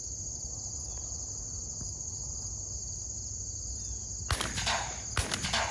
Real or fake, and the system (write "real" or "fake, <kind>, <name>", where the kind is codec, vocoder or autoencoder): real